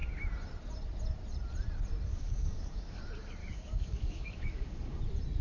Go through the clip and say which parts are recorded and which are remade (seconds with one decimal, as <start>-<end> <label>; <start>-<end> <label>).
0.0-2.1 recorded; 2.1-3.0 remade; 3.0-3.4 recorded; 3.4-5.0 remade; 5.0-5.4 recorded